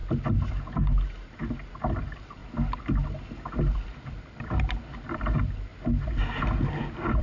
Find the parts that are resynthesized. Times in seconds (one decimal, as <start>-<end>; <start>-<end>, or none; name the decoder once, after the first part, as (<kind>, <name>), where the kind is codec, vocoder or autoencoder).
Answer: 1.7-2.4 (vocoder, BigVGAN v2); 3.6-5.7; 6.4-7.2